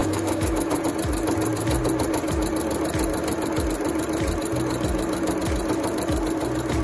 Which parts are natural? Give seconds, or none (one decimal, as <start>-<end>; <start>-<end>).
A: 0.8-6.8